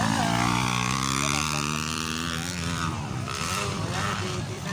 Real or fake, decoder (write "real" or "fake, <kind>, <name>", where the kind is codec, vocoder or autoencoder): fake, vocoder, BigVGAN v2